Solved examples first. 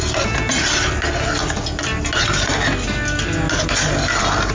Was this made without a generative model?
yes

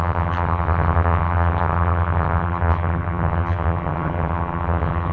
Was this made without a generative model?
no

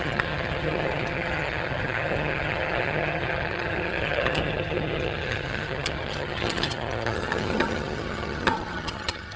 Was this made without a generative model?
no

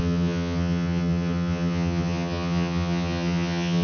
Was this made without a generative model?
no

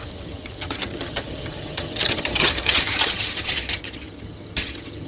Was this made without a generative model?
no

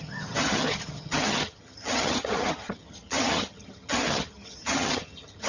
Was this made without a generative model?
no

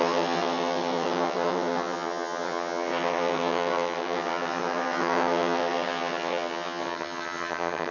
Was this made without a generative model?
no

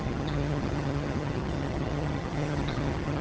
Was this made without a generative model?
no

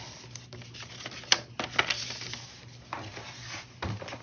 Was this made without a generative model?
yes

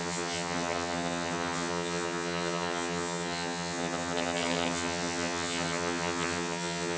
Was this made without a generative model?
no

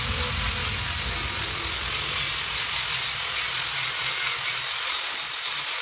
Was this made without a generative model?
yes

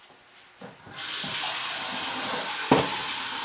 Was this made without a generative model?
yes